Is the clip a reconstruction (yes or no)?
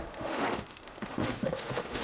yes